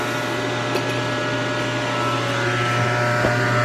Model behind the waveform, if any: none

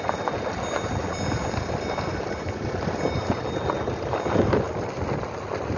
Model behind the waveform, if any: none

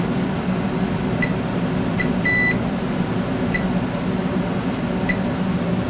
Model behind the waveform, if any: none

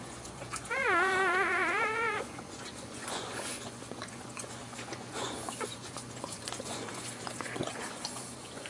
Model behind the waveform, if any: vocoder, Vocos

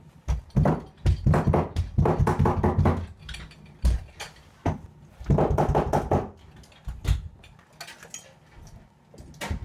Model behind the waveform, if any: none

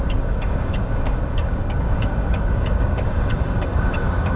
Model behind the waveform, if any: codec, DAC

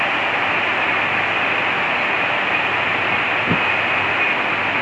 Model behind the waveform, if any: none